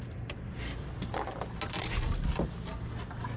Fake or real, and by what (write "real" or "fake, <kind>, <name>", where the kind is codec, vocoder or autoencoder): real